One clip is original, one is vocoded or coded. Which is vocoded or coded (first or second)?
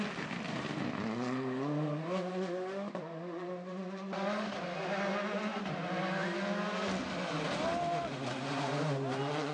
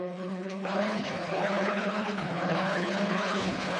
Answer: second